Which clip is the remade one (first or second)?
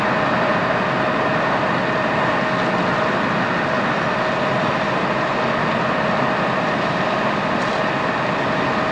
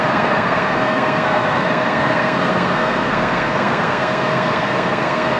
second